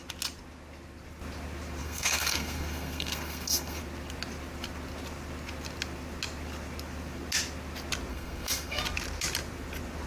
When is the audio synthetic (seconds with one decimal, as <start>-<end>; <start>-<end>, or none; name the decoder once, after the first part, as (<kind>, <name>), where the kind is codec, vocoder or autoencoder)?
1.8-3.8 (codec, SNAC); 8.1-8.8